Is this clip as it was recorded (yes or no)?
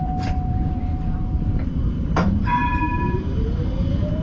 no